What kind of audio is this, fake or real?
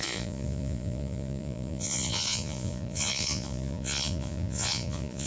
fake